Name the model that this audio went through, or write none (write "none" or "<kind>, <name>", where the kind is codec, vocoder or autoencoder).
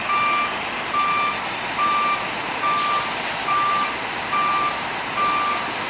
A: none